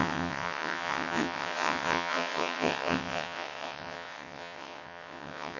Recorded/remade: remade